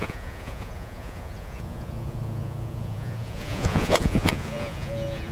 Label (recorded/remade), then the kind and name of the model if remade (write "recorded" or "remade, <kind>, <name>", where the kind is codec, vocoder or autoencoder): remade, vocoder, Vocos